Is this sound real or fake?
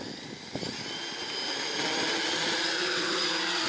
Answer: real